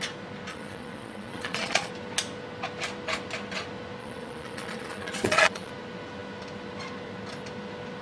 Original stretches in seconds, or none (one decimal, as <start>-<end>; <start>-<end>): 0.0-0.5; 1.9-4.0; 5.7-8.0